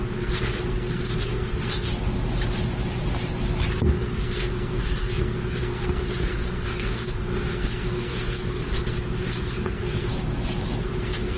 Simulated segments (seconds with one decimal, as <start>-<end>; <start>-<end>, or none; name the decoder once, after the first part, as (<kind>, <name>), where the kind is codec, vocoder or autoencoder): 0.0-1.9 (codec, SNAC); 3.7-10.1; 10.8-11.4